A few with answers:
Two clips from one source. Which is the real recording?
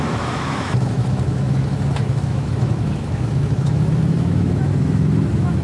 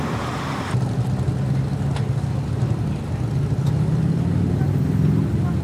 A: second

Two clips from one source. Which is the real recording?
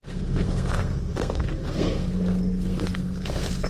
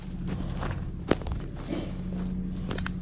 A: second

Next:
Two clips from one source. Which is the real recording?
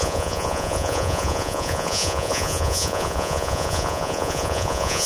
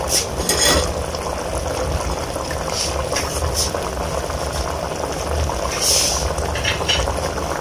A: second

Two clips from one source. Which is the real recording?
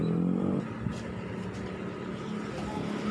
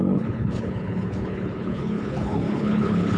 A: first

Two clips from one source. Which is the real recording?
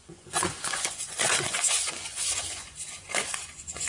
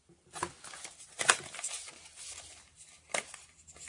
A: second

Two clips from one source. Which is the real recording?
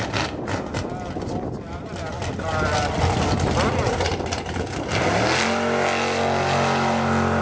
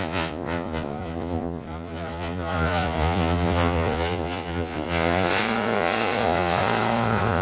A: first